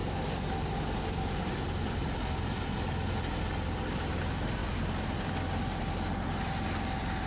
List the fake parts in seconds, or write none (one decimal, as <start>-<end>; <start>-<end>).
0.0-3.2; 4.6-5.3